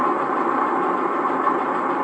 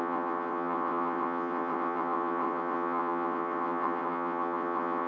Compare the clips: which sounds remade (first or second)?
second